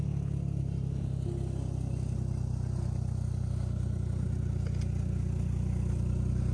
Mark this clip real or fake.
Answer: real